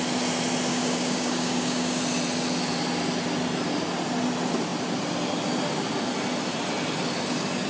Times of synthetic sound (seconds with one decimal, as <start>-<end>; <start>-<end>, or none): 0.7-2.0